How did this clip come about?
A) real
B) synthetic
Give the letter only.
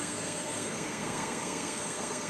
B